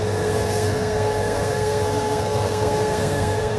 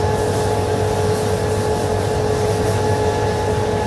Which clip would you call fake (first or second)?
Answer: first